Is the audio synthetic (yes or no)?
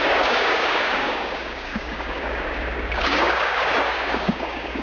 yes